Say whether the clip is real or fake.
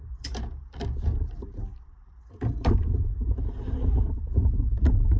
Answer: fake